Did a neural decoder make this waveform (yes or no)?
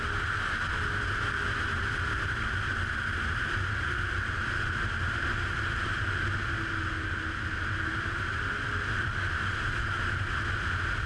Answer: no